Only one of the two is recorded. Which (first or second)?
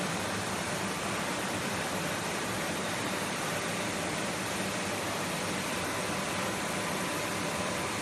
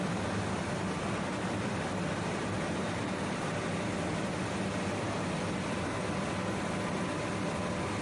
second